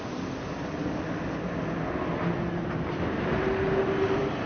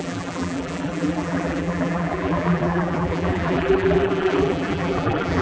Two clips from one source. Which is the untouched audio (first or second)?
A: first